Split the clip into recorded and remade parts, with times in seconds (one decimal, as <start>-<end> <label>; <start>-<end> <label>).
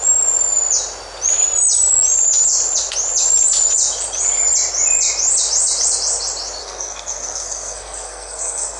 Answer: 0.0-6.6 recorded; 6.6-8.8 remade